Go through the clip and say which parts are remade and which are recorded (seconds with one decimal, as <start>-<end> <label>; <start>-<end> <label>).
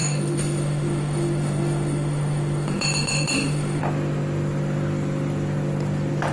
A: 0.0-3.8 remade; 3.8-6.3 recorded